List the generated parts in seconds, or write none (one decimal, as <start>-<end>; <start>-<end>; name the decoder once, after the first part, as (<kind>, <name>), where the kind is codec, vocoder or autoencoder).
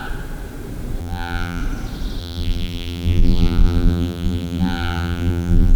1.0-1.6 (vocoder, BigVGAN v2); 2.2-5.8